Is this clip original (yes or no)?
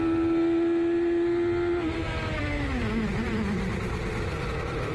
yes